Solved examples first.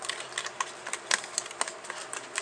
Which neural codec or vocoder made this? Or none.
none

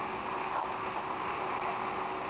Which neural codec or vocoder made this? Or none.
none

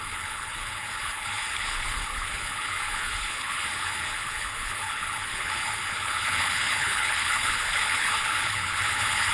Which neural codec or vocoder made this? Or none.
codec, HILCodec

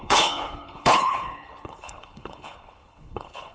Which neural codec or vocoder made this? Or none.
codec, HILCodec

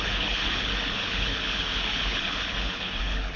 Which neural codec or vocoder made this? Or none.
codec, HILCodec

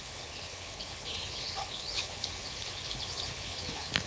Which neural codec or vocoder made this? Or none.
codec, HILCodec